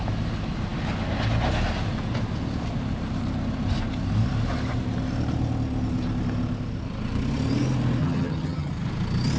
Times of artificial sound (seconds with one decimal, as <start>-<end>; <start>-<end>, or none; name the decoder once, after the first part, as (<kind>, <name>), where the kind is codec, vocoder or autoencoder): 8.0-8.7 (vocoder, HiFi-GAN)